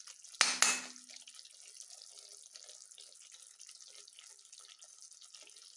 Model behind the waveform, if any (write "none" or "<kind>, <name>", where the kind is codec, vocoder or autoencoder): none